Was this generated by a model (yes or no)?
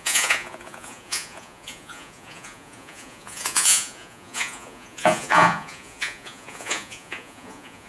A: yes